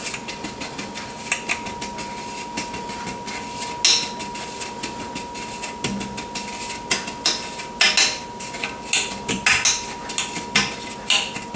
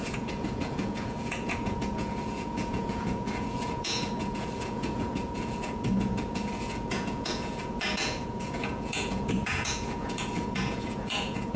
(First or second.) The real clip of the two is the first